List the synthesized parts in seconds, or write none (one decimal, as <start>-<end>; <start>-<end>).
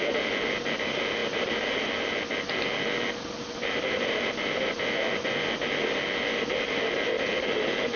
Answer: none